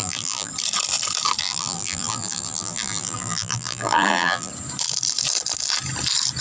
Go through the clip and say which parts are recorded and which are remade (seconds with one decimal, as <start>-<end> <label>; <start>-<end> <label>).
0.0-0.5 remade; 0.5-1.4 recorded; 1.4-4.5 remade; 4.5-6.4 recorded